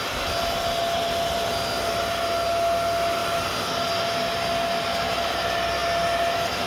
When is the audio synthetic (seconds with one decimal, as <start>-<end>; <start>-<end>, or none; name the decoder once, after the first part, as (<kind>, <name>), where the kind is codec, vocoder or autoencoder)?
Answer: none